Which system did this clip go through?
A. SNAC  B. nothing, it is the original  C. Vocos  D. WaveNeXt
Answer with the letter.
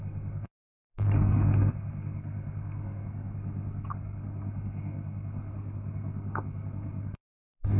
A